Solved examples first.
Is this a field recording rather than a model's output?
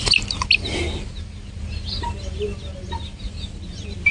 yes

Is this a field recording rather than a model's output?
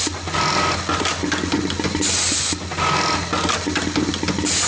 yes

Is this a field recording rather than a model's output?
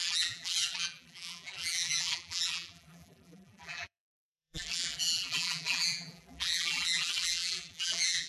no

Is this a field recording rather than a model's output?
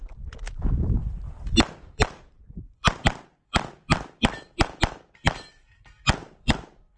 no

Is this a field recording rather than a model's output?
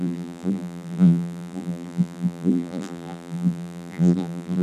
no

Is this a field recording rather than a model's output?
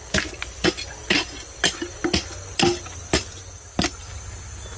yes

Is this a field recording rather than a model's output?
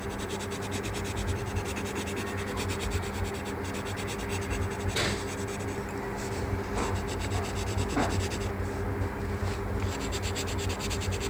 yes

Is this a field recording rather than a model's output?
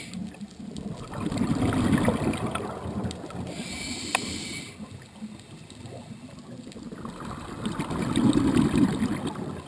yes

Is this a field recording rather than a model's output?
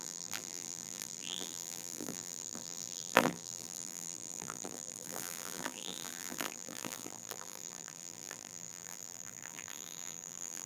no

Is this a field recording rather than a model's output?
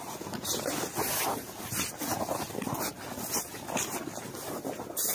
yes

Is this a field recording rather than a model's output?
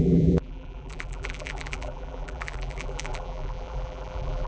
no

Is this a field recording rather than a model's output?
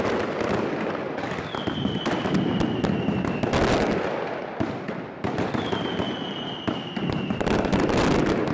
yes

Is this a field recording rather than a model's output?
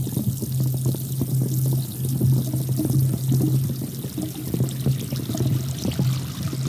yes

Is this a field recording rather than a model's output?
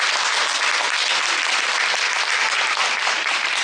yes